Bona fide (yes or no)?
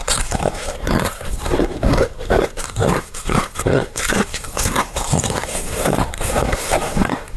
no